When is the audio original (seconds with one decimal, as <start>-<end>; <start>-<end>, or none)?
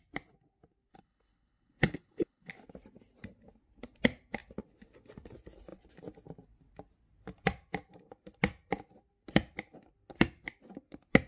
0.0-0.9; 2.5-11.3